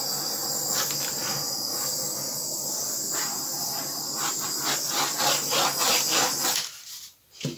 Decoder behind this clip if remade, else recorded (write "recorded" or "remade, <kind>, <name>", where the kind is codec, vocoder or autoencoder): recorded